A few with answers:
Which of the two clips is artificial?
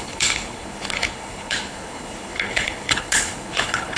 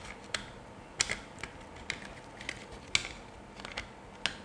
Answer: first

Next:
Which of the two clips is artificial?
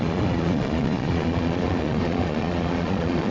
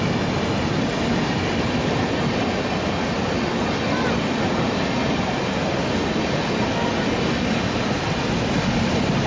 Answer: first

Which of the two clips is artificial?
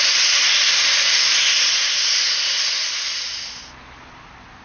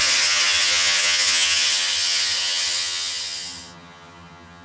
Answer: second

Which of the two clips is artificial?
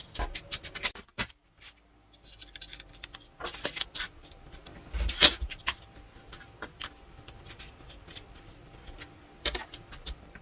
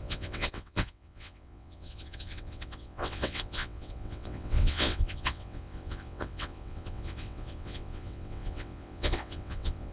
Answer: second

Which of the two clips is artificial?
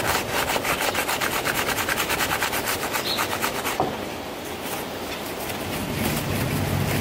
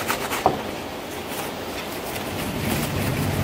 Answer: second